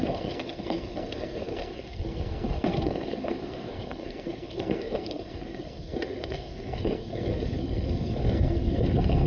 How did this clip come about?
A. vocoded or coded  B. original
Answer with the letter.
A